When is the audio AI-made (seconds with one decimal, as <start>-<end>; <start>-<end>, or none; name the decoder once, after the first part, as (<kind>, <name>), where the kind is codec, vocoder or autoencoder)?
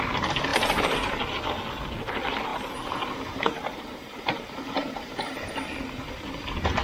0.5-1.1 (vocoder, BigVGAN v2); 2.5-5.5